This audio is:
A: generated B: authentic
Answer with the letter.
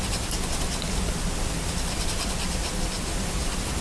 B